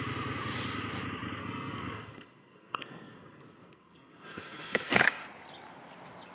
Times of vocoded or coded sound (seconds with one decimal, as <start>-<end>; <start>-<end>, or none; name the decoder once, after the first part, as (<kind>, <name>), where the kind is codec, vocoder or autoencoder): 1.4-5.2 (codec, SNAC)